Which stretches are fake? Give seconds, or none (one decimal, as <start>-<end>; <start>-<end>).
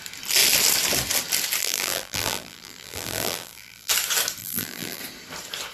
1.6-3.9; 4.4-5.0